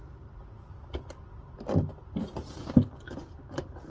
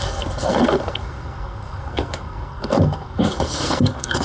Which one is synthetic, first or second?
second